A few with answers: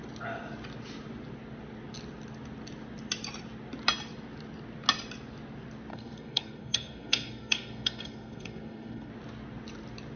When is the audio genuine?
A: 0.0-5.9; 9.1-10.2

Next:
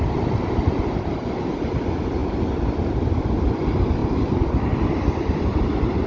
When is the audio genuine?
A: 0.0-6.1

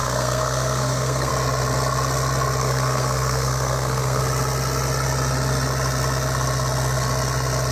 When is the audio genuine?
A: 1.3-2.6; 4.2-7.7

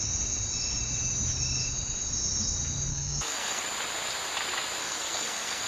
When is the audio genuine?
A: 0.0-2.9; 3.6-4.8

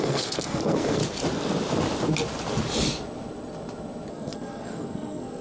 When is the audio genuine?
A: 1.0-4.1

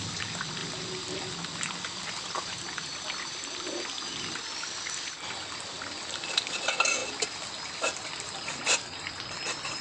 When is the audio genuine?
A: 0.0-9.8

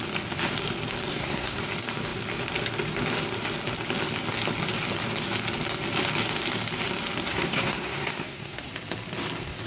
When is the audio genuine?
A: 0.0-1.1; 1.6-7.3; 8.7-9.7

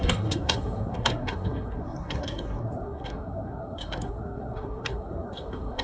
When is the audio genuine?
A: none